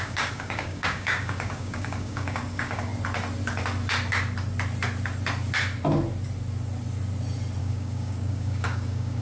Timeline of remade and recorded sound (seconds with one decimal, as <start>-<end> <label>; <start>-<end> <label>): 0.0-2.9 remade; 2.9-7.6 recorded; 7.6-9.2 remade